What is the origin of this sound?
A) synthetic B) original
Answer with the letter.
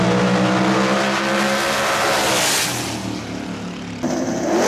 B